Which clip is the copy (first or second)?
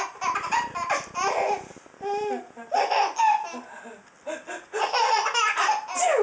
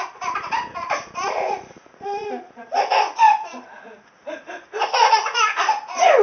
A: second